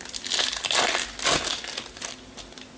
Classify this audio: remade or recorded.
recorded